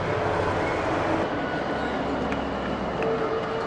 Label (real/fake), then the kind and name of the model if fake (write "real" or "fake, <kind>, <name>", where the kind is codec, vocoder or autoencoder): real